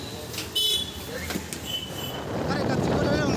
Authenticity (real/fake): real